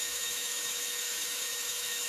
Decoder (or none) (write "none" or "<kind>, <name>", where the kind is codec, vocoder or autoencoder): autoencoder, DAC-VAE